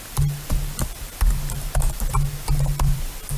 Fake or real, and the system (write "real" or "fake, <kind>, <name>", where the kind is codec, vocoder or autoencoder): fake, vocoder, BigVGAN v2